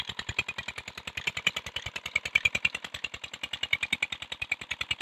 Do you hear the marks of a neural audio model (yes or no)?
no